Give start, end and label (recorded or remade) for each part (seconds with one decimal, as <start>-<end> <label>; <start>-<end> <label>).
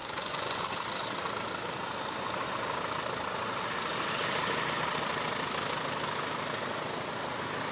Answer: 0.0-0.6 remade; 0.6-7.7 recorded